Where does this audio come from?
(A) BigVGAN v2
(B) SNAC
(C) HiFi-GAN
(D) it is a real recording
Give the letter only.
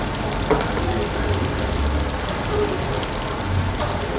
D